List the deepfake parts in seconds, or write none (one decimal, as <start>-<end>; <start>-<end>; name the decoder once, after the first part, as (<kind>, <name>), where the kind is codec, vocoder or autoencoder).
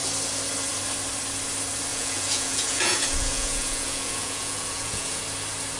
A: 1.9-5.2 (vocoder, Vocos)